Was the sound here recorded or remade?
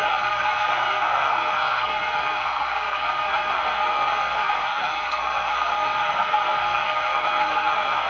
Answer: remade